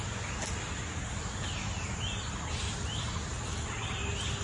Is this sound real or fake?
real